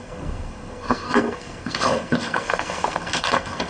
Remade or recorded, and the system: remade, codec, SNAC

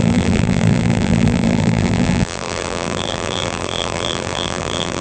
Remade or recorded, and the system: remade, vocoder, BigVGAN v2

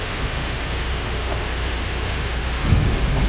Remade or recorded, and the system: remade, autoencoder, DAC-VAE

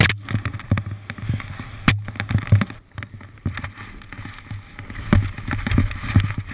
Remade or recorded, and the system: recorded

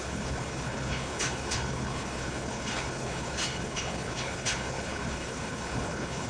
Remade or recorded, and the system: remade, codec, HILCodec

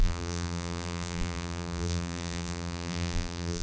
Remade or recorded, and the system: remade, vocoder, BigVGAN v2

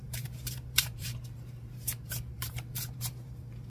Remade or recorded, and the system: remade, vocoder, BigVGAN v2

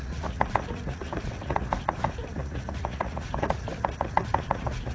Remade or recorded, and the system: remade, vocoder, Vocos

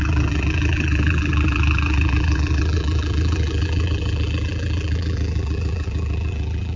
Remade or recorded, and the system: remade, vocoder, BigVGAN v2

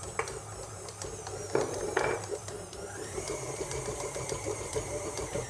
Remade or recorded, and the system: remade, vocoder, BigVGAN v2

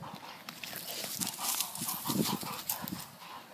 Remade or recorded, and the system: recorded